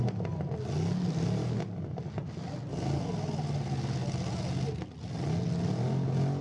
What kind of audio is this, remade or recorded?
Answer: recorded